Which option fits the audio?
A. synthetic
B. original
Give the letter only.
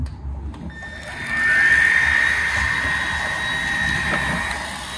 B